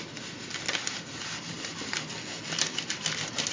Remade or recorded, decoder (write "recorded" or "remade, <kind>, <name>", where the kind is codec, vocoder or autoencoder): recorded